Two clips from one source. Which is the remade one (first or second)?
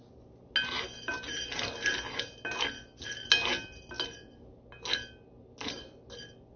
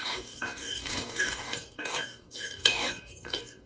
second